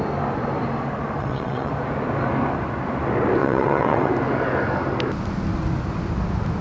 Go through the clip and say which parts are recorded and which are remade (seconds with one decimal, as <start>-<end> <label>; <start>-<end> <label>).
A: 0.0-1.2 recorded; 1.2-1.7 remade; 1.7-3.4 recorded; 3.4-4.1 remade; 4.1-6.6 recorded